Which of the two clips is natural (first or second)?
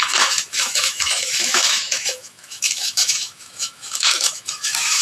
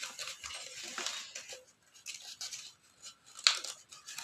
second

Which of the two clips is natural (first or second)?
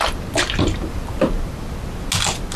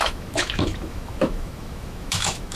first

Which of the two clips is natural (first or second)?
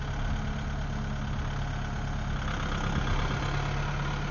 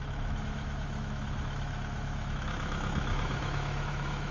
first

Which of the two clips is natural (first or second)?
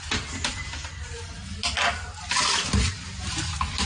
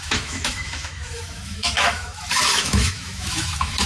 first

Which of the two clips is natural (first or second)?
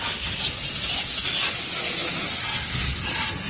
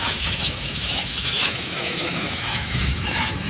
first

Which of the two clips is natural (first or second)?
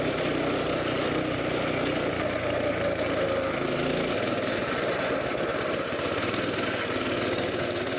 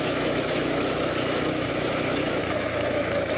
first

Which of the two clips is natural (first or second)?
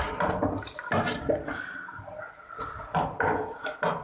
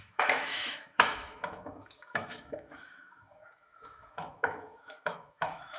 first